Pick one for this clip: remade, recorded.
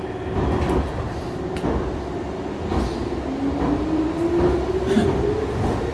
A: recorded